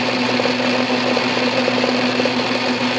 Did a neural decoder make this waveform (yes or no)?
no